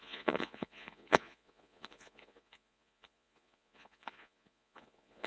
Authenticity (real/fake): fake